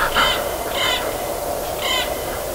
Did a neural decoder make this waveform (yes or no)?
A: no